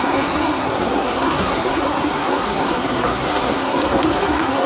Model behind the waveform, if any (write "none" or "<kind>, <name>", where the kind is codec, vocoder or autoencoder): codec, SNAC